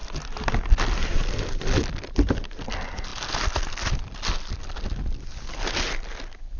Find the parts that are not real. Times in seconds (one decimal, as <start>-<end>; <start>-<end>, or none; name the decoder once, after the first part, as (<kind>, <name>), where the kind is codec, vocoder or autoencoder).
none